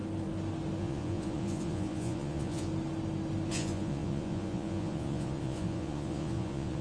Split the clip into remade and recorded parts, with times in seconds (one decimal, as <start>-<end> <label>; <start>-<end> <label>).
0.0-0.8 recorded; 0.8-2.7 remade; 2.7-3.5 recorded; 3.5-6.8 remade